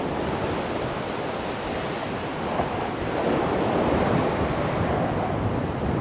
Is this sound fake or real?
real